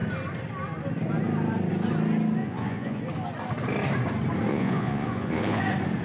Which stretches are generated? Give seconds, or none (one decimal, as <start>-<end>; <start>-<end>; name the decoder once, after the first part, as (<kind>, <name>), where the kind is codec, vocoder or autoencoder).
2.4-3.0 (vocoder, Vocos); 4.5-5.6